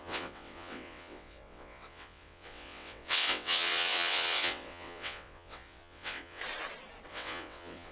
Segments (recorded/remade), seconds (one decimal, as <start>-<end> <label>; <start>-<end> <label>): 0.0-6.4 remade; 6.4-7.1 recorded; 7.1-7.9 remade